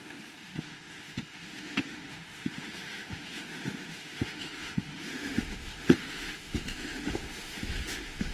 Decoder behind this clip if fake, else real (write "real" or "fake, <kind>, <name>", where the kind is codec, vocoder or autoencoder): fake, autoencoder, DAC-VAE